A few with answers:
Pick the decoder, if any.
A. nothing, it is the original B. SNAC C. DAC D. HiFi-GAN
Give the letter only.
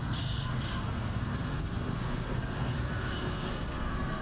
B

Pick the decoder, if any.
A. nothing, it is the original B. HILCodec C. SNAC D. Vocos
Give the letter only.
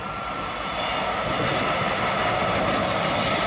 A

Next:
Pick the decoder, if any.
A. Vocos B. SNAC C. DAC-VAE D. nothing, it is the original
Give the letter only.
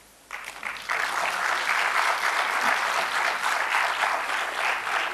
D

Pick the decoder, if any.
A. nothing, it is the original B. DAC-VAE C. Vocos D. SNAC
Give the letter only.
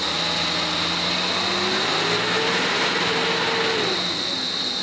A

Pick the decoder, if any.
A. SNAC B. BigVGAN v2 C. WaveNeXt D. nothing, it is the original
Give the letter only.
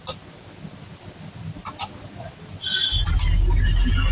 D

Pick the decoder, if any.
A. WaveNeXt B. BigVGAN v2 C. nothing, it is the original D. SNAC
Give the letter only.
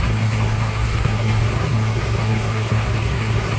D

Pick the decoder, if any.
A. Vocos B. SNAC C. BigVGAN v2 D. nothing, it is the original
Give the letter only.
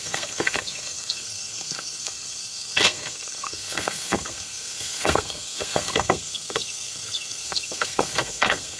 B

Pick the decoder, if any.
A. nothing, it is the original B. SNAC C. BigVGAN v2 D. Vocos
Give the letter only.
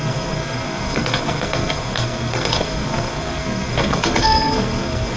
B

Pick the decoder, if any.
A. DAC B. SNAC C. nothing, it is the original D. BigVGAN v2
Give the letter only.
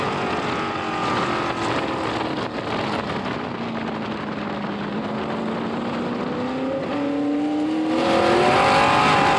C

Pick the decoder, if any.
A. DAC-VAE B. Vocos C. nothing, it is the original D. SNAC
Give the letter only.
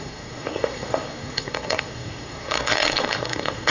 D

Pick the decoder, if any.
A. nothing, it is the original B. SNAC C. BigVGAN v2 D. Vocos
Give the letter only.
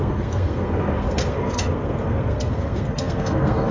B